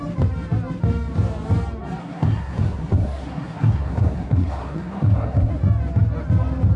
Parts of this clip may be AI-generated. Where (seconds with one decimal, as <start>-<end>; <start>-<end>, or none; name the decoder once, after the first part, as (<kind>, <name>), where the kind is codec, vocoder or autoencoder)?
2.0-5.5 (codec, SNAC)